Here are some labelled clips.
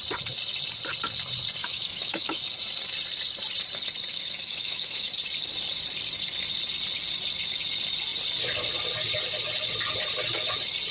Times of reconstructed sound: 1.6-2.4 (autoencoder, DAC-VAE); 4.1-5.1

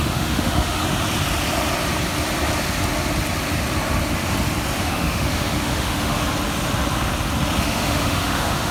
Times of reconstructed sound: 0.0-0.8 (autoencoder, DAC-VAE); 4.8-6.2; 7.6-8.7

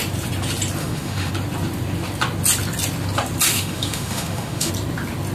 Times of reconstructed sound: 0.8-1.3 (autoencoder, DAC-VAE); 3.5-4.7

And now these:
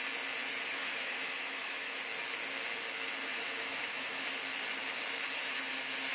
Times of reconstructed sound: 0.8-2.0 (autoencoder, DAC-VAE); 3.3-4.2

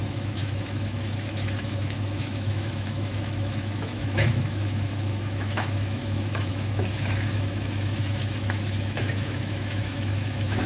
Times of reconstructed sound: 0.0-10.7 (autoencoder, DAC-VAE)

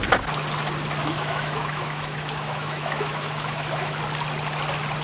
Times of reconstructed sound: 1.0-4.0 (autoencoder, DAC-VAE)

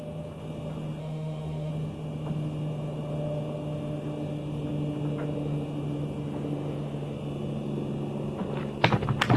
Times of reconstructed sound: 1.0-1.7 (autoencoder, DAC-VAE)